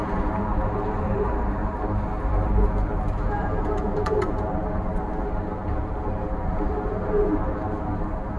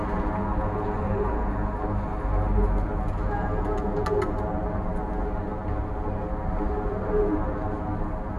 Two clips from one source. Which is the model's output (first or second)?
first